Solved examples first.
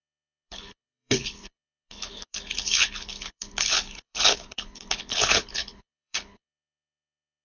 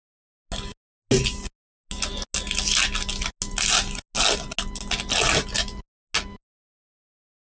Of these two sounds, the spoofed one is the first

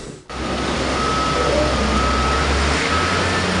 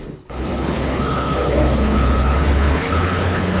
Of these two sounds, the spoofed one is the second